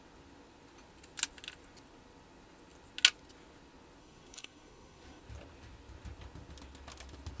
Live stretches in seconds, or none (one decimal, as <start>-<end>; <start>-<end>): 0.0-4.0; 5.2-7.4